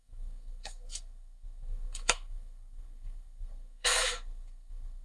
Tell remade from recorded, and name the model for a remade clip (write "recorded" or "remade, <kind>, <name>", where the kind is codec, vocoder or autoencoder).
remade, codec, SNAC